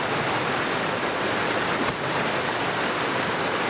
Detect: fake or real real